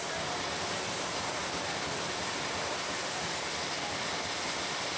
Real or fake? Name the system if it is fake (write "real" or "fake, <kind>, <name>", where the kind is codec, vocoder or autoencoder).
real